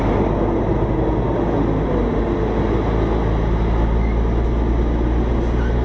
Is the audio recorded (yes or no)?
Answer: yes